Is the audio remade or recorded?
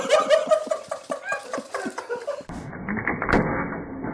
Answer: recorded